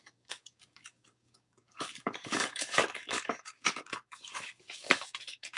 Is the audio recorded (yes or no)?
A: no